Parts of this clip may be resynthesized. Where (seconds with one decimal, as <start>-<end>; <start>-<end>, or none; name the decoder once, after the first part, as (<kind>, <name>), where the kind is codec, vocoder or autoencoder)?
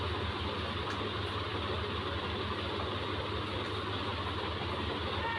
none